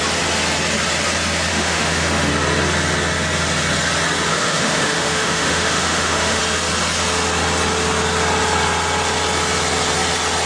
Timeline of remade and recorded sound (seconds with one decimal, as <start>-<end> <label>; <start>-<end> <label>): 0.0-1.5 recorded; 1.5-2.3 remade; 2.3-4.3 recorded; 4.3-6.4 remade; 6.4-10.5 recorded